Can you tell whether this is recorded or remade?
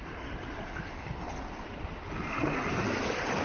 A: recorded